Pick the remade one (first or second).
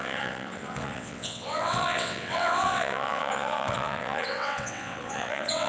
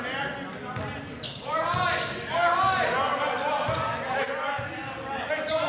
first